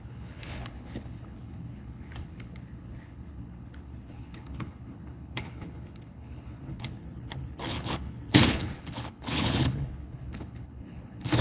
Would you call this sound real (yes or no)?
no